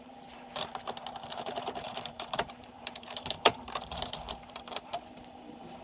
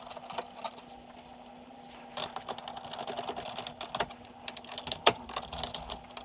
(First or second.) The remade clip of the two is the first